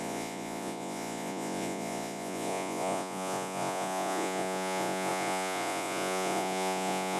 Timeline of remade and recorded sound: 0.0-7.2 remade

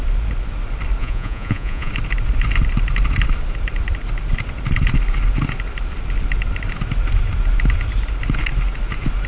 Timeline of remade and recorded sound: 0.0-1.0 recorded; 1.0-1.9 remade; 1.9-9.3 recorded